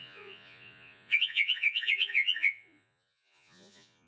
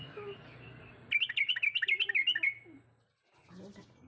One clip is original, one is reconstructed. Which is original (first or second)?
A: second